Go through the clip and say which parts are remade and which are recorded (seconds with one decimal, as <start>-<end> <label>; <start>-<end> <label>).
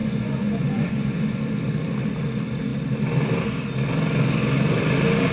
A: 0.0-1.4 remade; 1.4-5.3 recorded